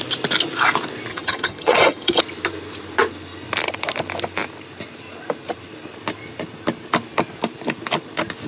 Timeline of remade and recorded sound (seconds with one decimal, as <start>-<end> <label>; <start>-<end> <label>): 0.0-1.1 recorded; 1.1-2.2 remade; 2.2-8.5 recorded